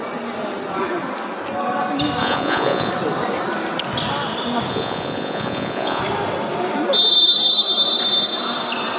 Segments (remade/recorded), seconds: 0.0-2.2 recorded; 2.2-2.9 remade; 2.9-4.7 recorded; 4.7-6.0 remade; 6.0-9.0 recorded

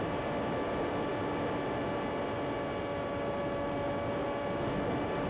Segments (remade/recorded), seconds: 0.0-5.3 recorded